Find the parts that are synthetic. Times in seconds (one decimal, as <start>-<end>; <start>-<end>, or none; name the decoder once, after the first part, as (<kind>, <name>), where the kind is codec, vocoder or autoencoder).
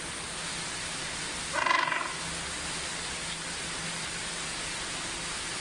none